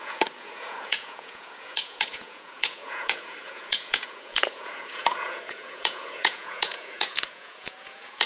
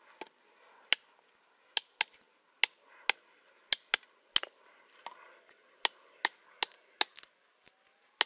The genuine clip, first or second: second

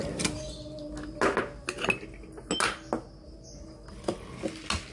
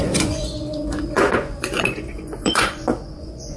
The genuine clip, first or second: first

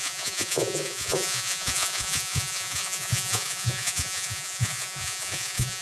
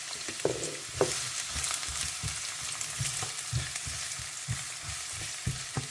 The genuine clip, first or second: second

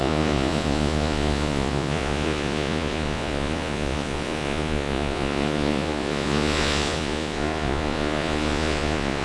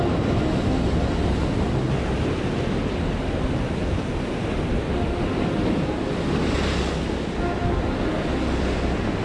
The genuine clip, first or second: second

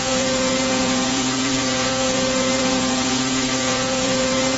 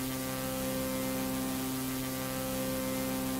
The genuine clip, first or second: second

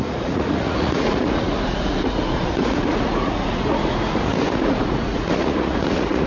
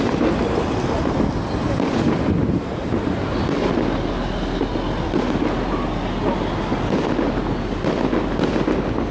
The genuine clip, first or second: second